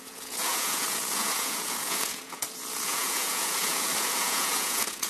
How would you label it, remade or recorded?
remade